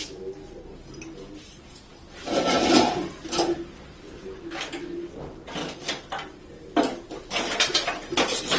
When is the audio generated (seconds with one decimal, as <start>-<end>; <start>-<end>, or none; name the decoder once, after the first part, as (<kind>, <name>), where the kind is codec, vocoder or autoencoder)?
none